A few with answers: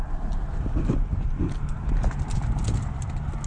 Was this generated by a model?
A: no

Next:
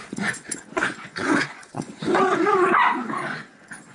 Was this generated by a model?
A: yes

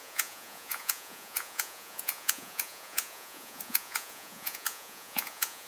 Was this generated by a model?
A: yes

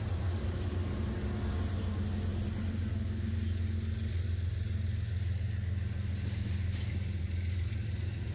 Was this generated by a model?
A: no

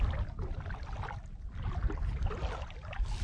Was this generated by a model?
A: no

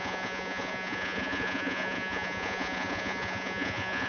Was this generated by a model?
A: yes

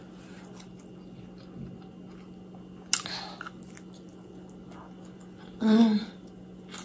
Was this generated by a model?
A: no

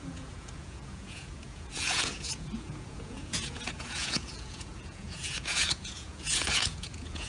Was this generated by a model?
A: yes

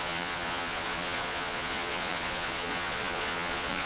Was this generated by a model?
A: yes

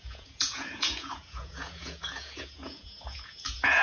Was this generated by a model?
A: yes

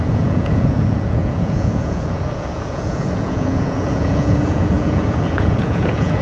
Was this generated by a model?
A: yes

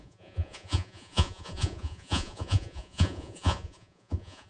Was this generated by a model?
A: yes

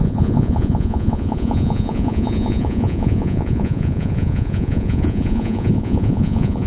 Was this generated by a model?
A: yes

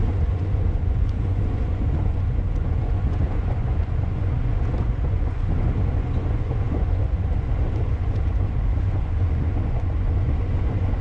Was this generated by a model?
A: yes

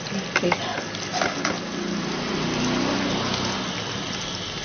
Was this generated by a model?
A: no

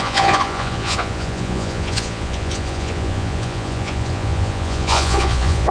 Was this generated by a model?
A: yes